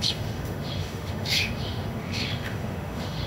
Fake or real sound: fake